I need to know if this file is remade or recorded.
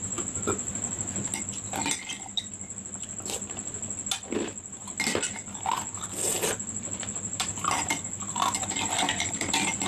recorded